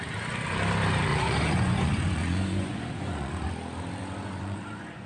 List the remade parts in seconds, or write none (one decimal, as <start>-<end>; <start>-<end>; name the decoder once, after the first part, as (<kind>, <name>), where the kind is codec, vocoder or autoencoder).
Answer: 1.1-3.5 (vocoder, Vocos); 4.0-5.1